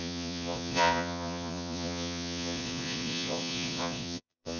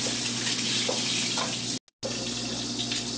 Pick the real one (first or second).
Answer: second